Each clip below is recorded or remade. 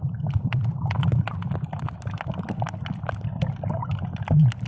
recorded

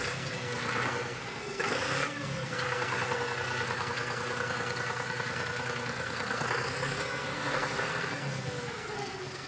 remade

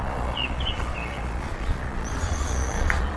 remade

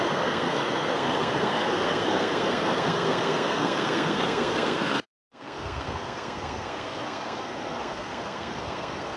remade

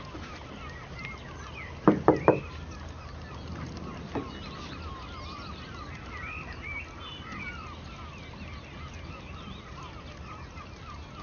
recorded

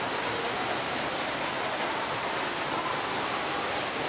recorded